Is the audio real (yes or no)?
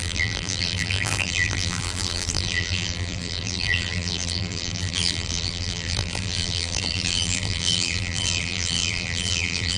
no